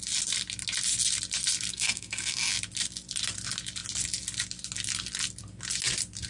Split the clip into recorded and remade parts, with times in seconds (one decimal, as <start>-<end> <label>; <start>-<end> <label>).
0.0-1.7 recorded; 1.7-2.5 remade; 2.5-6.3 recorded